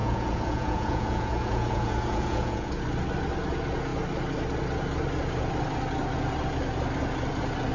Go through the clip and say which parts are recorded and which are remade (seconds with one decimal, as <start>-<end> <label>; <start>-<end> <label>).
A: 0.0-2.7 remade; 2.7-7.7 recorded